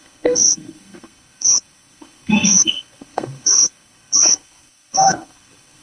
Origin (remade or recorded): remade